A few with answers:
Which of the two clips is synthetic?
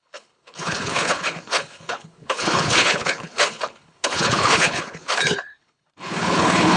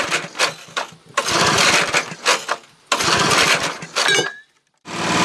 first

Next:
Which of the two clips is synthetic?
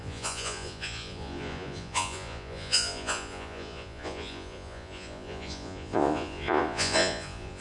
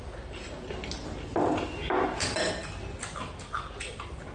first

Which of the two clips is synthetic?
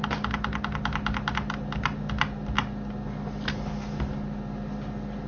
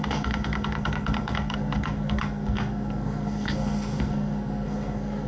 second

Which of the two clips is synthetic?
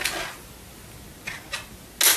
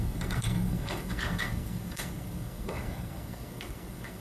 second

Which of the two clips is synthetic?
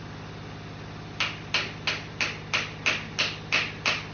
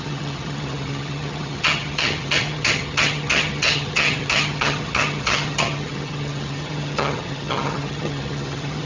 second